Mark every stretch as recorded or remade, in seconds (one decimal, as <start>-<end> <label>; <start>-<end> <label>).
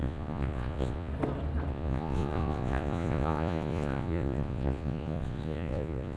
0.0-1.1 remade; 1.1-1.7 recorded; 1.7-6.2 remade